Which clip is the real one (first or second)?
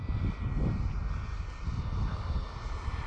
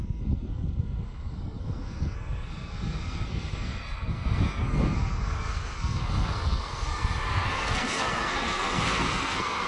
first